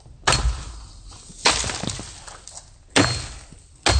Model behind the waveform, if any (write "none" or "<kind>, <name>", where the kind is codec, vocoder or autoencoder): none